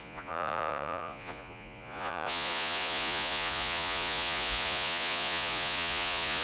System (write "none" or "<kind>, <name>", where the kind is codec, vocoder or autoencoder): vocoder, Vocos